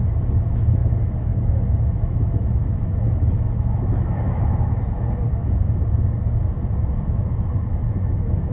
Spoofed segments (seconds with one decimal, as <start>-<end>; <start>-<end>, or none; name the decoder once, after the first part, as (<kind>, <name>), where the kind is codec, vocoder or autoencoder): 0.8-4.8 (autoencoder, DAC-VAE); 7.7-8.5